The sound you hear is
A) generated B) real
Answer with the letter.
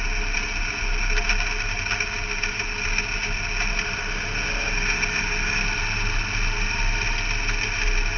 B